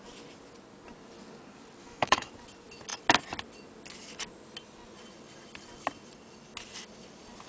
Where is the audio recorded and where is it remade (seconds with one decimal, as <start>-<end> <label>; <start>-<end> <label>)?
0.0-1.8 recorded; 1.8-2.3 remade; 2.3-7.5 recorded

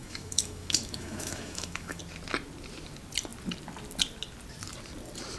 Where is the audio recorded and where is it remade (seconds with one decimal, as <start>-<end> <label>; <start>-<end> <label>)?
0.0-2.0 remade; 2.0-5.4 recorded